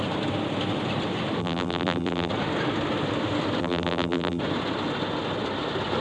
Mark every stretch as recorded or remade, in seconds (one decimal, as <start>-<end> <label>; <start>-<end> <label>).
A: 0.0-1.4 recorded; 1.4-2.3 remade; 2.3-3.6 recorded; 3.6-4.4 remade; 4.4-6.0 recorded